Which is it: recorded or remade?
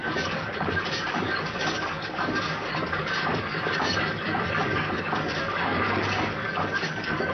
remade